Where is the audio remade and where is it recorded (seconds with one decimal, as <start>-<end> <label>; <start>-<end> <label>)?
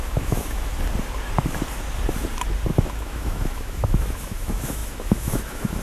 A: 0.0-0.7 remade; 0.7-2.7 recorded; 2.7-5.8 remade